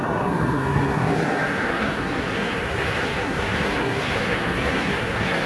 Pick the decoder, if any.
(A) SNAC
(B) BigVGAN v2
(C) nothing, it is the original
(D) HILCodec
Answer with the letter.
A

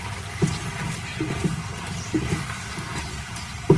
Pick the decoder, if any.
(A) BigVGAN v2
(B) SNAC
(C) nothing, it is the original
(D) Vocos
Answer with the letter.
C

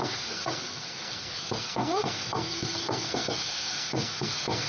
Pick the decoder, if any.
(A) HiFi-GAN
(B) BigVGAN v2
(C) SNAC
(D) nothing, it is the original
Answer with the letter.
C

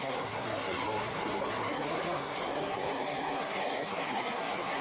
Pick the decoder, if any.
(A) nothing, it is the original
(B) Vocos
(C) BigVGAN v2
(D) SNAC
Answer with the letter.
D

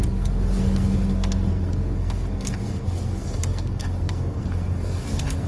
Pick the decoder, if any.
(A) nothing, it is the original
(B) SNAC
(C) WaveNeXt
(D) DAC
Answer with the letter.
B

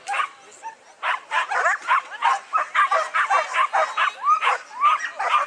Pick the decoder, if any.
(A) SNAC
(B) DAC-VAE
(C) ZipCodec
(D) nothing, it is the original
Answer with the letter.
D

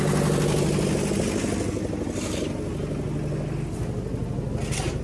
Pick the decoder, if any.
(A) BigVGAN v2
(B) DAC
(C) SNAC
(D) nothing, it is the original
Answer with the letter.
D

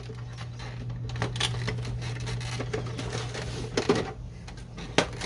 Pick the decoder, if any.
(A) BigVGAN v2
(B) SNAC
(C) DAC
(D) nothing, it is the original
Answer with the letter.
D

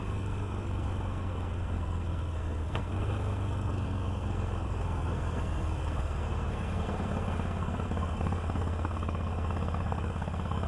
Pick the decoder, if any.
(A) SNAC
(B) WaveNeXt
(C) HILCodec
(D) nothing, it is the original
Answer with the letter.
A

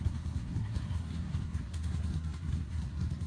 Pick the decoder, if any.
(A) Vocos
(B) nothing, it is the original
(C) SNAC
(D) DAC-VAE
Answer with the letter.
C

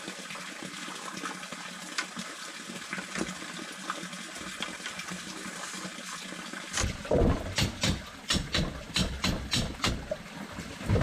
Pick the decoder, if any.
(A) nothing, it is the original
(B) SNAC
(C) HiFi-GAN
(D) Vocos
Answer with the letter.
A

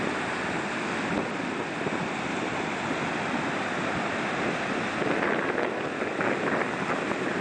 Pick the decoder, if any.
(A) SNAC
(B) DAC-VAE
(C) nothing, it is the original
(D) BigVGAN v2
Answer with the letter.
C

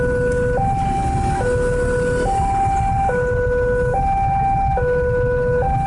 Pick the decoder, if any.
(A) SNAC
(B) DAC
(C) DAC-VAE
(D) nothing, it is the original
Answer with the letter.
D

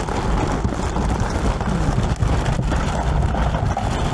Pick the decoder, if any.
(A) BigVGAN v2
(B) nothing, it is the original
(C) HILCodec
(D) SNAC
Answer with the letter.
B